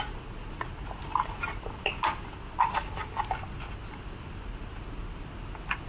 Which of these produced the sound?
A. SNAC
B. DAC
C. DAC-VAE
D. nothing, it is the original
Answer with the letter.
D